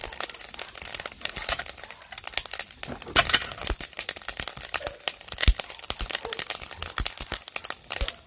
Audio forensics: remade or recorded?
recorded